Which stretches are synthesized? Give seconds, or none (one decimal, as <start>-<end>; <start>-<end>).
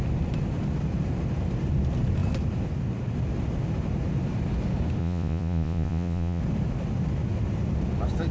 5.0-6.4